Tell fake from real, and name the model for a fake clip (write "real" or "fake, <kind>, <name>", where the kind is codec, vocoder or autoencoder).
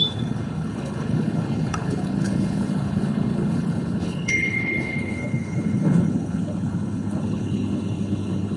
fake, codec, HILCodec